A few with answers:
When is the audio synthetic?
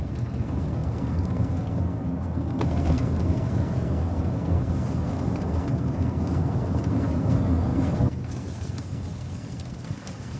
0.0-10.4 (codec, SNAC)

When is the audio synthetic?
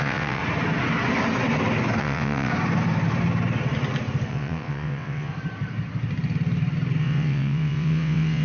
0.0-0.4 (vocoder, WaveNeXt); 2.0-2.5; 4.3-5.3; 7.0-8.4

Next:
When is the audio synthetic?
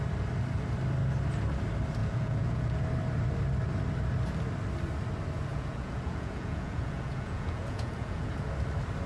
2.0-2.8 (vocoder, Vocos); 5.5-8.5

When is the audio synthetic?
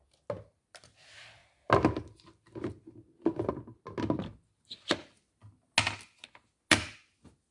none